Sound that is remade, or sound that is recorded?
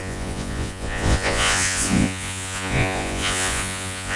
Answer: remade